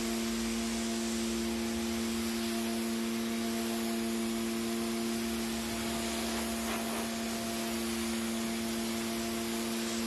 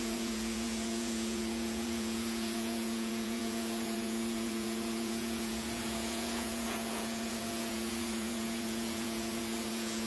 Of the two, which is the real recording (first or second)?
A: first